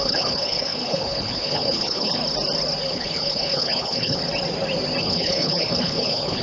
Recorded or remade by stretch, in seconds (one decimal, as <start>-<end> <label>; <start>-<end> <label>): 0.0-2.2 remade; 2.2-2.9 recorded; 2.9-4.2 remade; 4.2-5.0 recorded; 5.0-6.4 remade